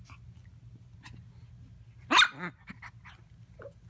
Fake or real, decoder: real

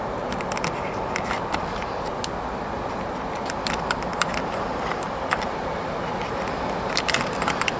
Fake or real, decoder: real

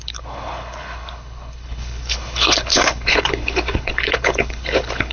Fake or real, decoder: fake, codec, HILCodec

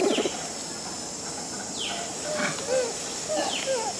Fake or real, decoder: real